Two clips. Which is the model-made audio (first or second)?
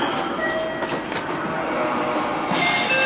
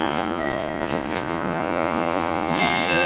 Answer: second